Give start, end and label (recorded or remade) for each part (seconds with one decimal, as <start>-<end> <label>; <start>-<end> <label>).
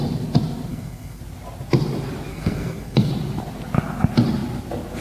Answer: 0.0-0.7 recorded; 0.7-1.2 remade; 1.2-2.3 recorded; 2.3-3.1 remade; 3.1-5.0 recorded